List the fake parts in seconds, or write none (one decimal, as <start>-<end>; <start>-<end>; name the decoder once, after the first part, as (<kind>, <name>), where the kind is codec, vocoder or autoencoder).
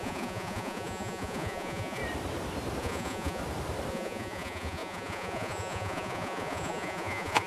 0.0-2.0 (vocoder, Vocos); 2.8-3.4; 3.9-7.5